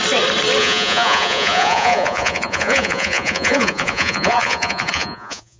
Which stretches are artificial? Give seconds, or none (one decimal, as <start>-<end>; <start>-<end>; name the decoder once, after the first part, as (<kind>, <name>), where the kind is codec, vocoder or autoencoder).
0.6-5.6 (vocoder, Vocos)